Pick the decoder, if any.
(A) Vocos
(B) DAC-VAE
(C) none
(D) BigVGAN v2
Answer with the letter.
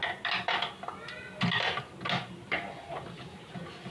C